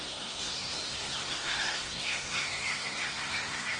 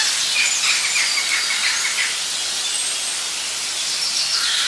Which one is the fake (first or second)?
first